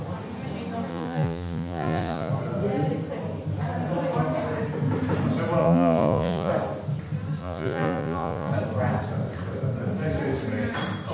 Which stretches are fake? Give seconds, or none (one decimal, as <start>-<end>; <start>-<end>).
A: 0.9-2.3; 5.6-6.5; 7.4-8.5